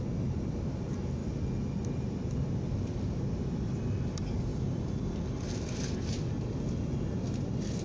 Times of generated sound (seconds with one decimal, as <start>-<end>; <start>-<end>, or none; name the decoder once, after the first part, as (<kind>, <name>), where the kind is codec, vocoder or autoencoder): none